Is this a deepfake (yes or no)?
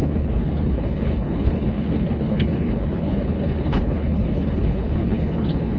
yes